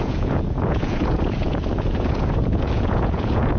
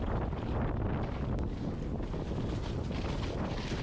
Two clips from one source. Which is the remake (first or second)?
first